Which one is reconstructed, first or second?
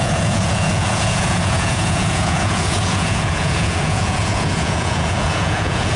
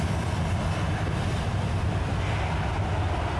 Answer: first